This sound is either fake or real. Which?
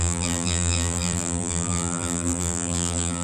fake